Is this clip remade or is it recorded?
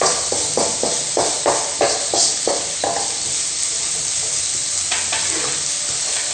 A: recorded